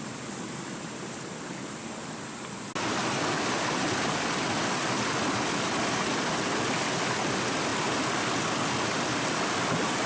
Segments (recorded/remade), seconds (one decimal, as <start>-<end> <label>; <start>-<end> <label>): 0.0-10.1 recorded